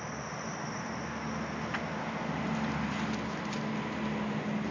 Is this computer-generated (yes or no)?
no